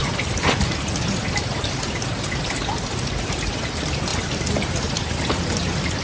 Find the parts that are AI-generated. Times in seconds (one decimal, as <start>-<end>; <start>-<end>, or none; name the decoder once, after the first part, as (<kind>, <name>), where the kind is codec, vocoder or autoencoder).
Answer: none